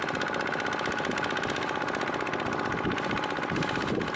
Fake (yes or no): no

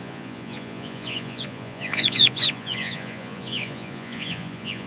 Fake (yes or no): yes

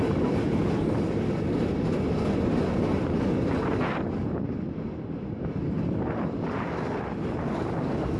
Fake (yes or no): no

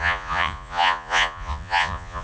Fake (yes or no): yes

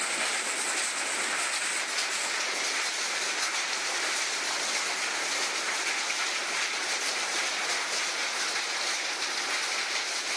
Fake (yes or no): no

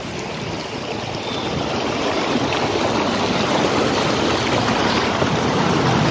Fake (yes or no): no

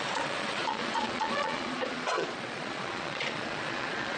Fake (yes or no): yes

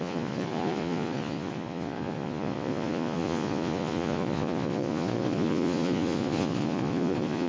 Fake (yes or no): yes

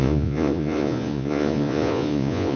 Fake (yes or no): yes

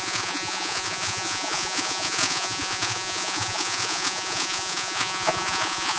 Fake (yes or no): yes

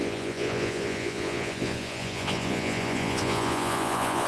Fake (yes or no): yes